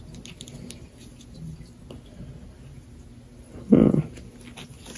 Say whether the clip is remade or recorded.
recorded